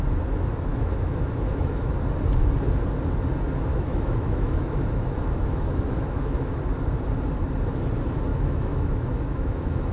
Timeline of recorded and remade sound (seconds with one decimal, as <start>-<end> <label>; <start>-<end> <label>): 0.0-0.7 recorded; 0.7-1.9 remade; 1.9-3.7 recorded; 3.7-6.6 remade; 6.6-8.3 recorded; 8.3-9.9 remade